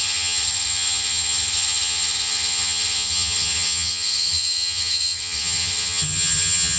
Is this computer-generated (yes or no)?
yes